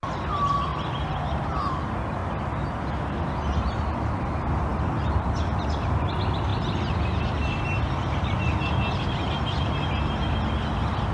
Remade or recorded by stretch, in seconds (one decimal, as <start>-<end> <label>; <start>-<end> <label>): 0.0-0.7 recorded; 0.7-1.6 remade; 1.6-2.2 recorded; 2.2-2.9 remade; 2.9-4.7 recorded; 4.7-5.3 remade; 5.3-11.1 recorded